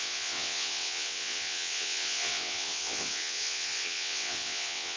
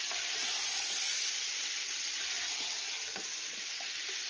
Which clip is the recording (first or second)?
second